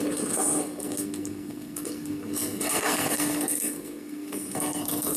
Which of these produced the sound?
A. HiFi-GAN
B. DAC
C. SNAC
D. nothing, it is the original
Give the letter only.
C